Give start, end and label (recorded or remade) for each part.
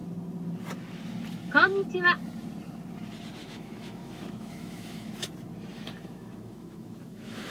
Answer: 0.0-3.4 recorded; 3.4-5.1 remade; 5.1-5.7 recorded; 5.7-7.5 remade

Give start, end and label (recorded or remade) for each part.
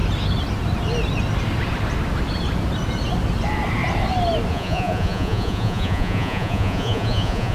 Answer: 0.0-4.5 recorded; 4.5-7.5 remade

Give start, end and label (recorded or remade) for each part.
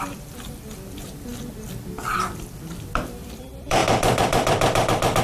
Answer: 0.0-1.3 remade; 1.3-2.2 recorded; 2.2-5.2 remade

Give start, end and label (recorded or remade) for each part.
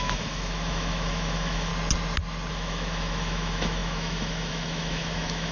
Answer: 0.0-1.7 remade; 1.7-2.5 recorded; 2.5-5.5 remade